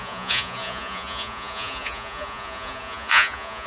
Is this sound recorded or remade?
remade